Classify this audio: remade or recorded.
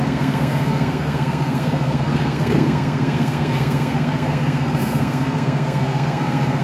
remade